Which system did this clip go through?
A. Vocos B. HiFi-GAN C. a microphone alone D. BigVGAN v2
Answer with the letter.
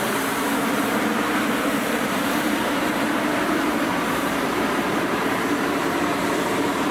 D